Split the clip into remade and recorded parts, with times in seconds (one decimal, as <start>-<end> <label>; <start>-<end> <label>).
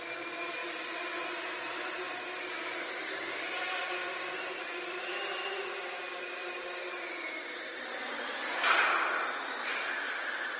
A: 0.0-6.4 recorded; 6.4-9.9 remade; 9.9-10.6 recorded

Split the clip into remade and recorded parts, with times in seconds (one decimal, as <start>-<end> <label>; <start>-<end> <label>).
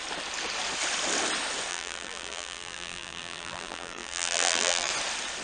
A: 0.0-1.7 recorded; 1.7-4.9 remade; 4.9-5.4 recorded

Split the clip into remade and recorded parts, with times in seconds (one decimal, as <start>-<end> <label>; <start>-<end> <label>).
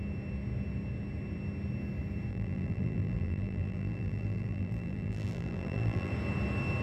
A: 0.0-2.3 recorded; 2.3-6.1 remade; 6.1-6.8 recorded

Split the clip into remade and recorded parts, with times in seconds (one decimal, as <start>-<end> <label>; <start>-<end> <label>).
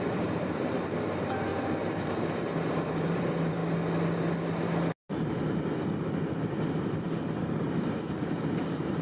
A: 0.0-3.6 remade; 3.6-5.1 recorded; 5.1-9.0 remade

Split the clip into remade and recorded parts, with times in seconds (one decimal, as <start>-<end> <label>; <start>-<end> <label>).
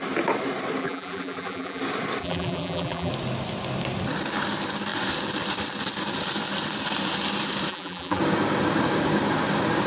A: 0.0-0.8 recorded; 0.8-1.8 remade; 1.8-2.2 recorded; 2.2-3.1 remade; 3.1-7.7 recorded; 7.7-8.2 remade; 8.2-9.9 recorded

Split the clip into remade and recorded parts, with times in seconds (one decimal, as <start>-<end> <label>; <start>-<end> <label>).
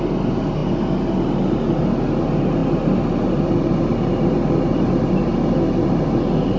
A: 0.0-6.6 recorded